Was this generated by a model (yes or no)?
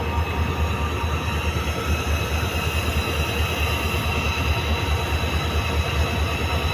no